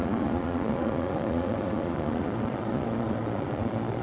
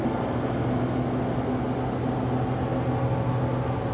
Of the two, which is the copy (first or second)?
first